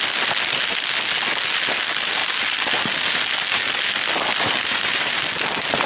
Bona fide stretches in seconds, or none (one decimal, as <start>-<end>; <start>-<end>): 0.0-5.9